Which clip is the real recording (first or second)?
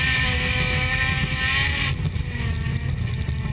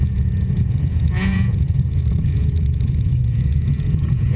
first